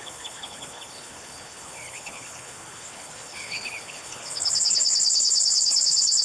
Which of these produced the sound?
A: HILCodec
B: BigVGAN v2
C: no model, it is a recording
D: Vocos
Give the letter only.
A